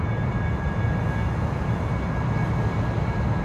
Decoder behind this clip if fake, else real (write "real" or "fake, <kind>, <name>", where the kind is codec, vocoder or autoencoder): real